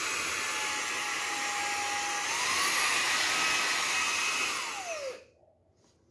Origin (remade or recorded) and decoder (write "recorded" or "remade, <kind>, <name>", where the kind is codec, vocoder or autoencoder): recorded